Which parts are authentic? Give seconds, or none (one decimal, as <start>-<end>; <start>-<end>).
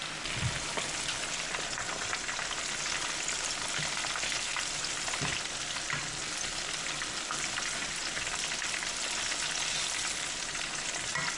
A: 0.0-11.4